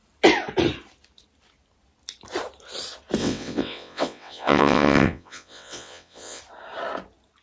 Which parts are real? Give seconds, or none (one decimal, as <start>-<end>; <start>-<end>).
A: 0.0-3.2; 6.4-7.4